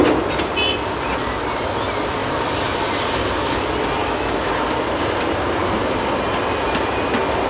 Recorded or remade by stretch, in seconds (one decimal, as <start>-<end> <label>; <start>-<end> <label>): 0.0-4.0 recorded; 4.0-4.5 remade; 4.5-7.5 recorded